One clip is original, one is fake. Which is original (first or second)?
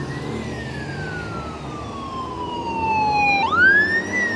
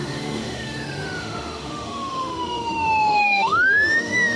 first